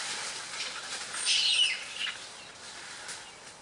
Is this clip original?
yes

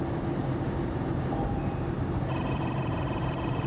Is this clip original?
no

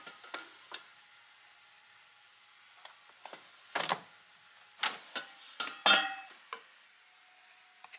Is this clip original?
yes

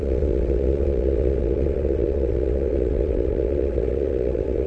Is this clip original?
no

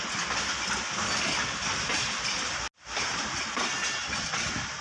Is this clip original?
yes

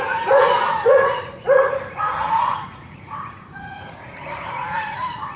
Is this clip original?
no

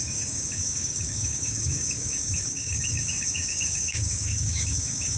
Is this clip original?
no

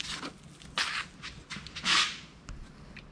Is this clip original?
yes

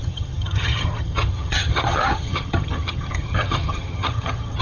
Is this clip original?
no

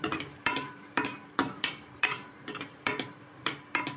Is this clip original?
no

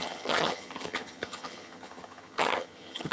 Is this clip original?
no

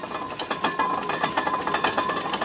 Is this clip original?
yes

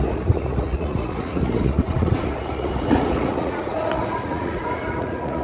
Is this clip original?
no